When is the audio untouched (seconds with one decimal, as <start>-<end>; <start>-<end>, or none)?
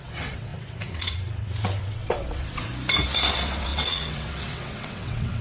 2.7-3.3